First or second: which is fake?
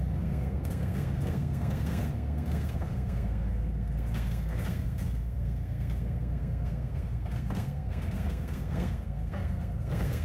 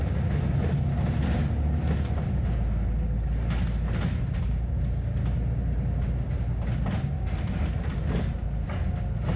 first